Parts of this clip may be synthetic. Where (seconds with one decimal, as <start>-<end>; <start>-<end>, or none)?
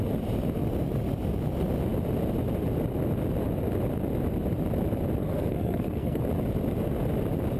5.2-6.2